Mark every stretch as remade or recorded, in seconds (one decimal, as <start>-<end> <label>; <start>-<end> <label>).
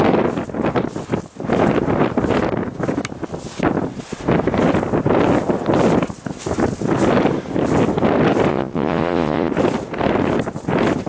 0.0-8.5 recorded; 8.5-9.5 remade; 9.5-11.1 recorded